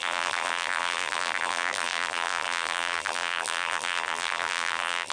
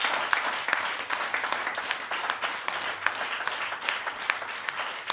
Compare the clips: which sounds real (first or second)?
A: second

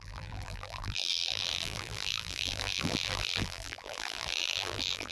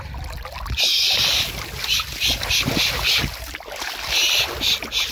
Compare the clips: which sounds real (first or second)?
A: second